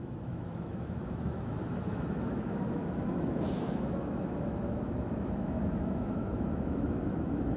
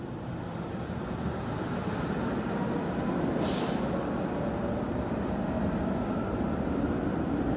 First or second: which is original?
second